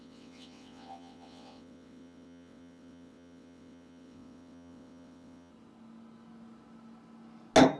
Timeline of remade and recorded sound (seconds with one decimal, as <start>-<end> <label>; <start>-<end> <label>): 0.0-5.5 remade; 5.5-7.8 recorded

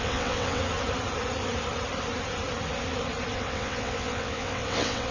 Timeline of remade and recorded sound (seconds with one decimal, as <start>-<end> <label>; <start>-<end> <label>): 0.0-0.6 remade; 0.6-3.3 recorded; 3.3-5.1 remade

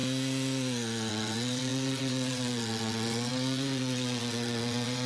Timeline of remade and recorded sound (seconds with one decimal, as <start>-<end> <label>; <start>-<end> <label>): 0.0-1.1 recorded; 1.1-5.1 remade

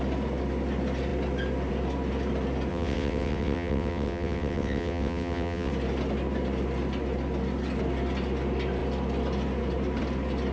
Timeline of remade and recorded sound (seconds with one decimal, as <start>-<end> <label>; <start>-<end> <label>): 0.0-2.7 recorded; 2.7-5.7 remade; 5.7-10.5 recorded

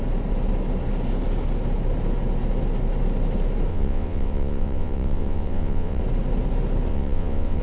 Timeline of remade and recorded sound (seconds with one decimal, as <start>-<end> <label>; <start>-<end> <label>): 0.0-3.7 recorded; 3.7-6.0 remade; 6.0-6.9 recorded; 6.9-7.6 remade

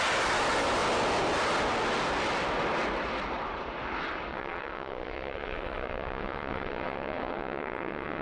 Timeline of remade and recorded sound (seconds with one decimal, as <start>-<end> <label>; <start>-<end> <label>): 0.0-4.3 recorded; 4.3-8.2 remade

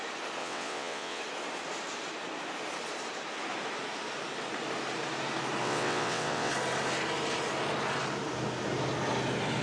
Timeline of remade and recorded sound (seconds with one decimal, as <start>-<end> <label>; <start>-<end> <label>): 0.0-0.4 recorded; 0.4-1.2 remade; 1.2-5.6 recorded; 5.6-6.5 remade; 6.5-9.6 recorded